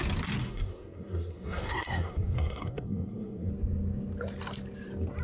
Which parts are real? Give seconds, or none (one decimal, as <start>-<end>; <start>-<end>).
0.0-0.4; 3.5-5.2